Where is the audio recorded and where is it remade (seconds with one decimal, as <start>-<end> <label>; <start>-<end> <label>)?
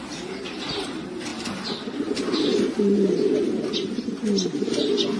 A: 0.0-5.2 recorded